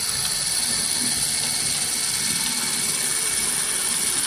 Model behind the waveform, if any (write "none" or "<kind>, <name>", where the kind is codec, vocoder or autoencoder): none